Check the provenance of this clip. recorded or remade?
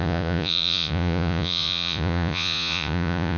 remade